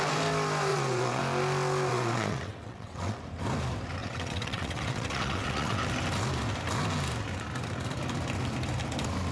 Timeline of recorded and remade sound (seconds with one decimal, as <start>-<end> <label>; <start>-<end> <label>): 0.0-0.7 recorded; 0.7-1.2 remade; 1.2-1.9 recorded; 1.9-3.2 remade; 3.2-4.0 recorded; 4.0-5.8 remade; 5.8-9.3 recorded